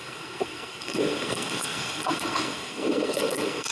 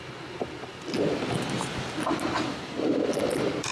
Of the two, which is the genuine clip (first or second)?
second